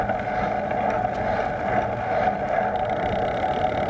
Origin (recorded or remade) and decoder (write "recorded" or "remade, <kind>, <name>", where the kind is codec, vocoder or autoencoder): recorded